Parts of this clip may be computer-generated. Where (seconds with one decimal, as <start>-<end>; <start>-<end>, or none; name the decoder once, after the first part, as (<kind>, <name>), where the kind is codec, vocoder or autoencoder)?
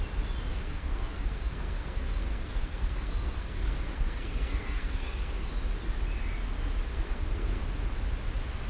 0.5-5.5 (codec, SNAC); 6.9-7.6